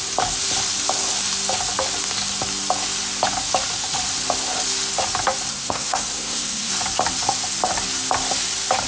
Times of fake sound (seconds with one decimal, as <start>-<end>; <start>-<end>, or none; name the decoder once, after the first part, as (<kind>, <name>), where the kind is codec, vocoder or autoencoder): 5.5-6.7 (codec, SNAC)